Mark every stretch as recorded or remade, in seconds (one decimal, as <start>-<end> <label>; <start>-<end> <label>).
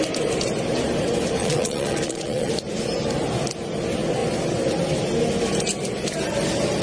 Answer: 0.0-1.4 recorded; 1.4-2.5 remade; 2.5-6.8 recorded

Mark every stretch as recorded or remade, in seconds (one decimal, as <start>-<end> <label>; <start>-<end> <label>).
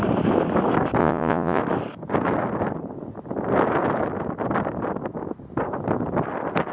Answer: 0.0-1.0 recorded; 1.0-1.6 remade; 1.6-6.7 recorded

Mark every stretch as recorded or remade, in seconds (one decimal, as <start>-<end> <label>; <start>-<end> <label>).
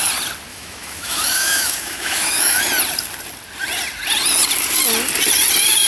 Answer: 0.0-0.5 recorded; 0.5-2.6 remade; 2.6-5.9 recorded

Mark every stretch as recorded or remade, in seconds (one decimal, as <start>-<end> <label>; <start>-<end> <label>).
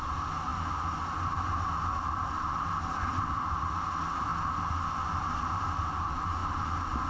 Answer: 0.0-6.4 recorded; 6.4-7.1 remade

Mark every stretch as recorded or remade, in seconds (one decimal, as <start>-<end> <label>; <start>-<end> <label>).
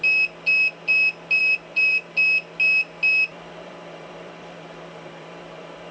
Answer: 0.0-1.4 recorded; 1.4-2.1 remade; 2.1-3.3 recorded; 3.3-5.9 remade